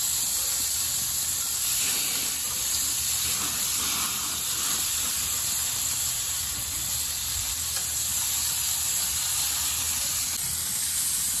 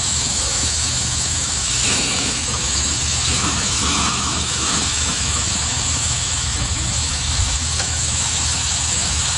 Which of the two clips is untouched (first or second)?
first